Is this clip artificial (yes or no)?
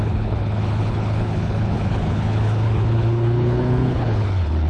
yes